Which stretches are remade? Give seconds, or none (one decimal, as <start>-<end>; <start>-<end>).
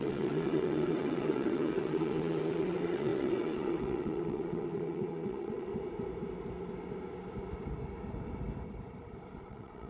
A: 0.0-5.7; 9.5-9.9